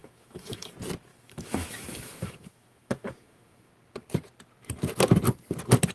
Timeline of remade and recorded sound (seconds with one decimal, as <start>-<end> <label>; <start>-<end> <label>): 0.0-0.7 remade; 0.7-1.1 recorded; 1.1-3.7 remade; 3.7-5.9 recorded